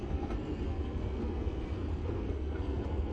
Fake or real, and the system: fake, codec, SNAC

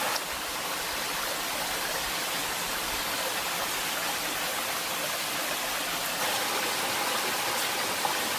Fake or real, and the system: real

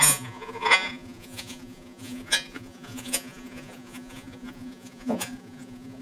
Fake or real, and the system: fake, vocoder, Vocos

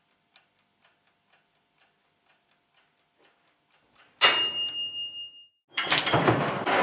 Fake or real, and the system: real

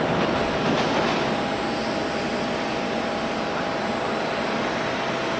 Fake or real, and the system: real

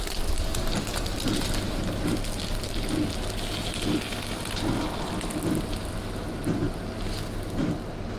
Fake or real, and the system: real